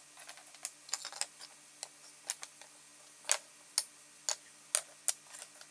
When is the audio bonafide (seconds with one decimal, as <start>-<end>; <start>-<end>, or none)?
0.0-5.7